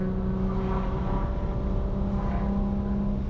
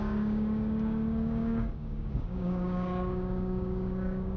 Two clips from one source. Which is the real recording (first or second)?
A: first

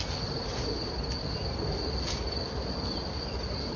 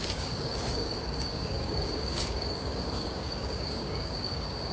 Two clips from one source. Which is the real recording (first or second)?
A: first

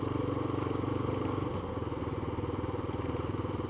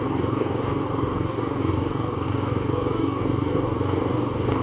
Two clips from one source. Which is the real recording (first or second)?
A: first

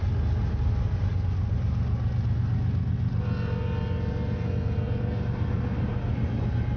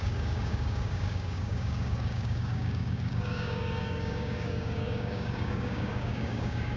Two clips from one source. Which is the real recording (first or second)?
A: first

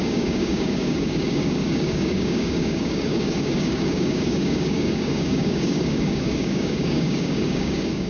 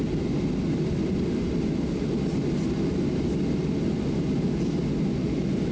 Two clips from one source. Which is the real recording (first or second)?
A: second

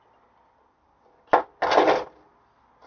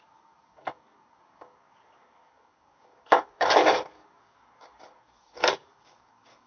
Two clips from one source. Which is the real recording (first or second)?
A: first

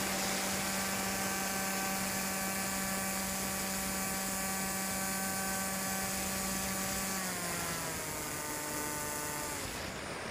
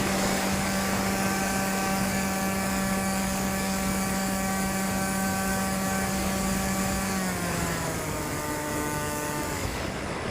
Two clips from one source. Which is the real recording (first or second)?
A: first